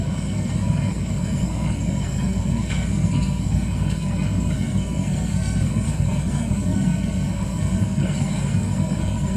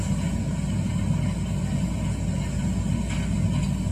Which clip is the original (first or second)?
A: second